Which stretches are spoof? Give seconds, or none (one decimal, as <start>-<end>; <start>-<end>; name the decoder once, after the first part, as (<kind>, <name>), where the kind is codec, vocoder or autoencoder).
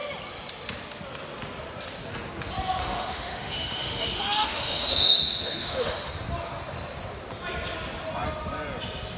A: 2.8-6.1 (autoencoder, DAC-VAE)